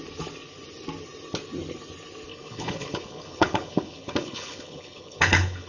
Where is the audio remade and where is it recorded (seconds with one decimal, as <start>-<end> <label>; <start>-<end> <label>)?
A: 0.0-2.3 recorded; 2.3-5.7 remade